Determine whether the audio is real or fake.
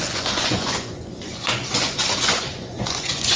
fake